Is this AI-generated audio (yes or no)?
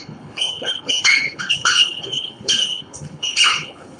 yes